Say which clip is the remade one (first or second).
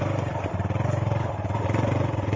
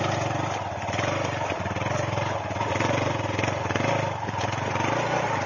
first